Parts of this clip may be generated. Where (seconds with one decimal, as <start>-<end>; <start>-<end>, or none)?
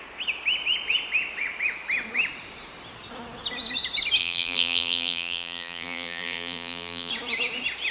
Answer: 4.2-7.1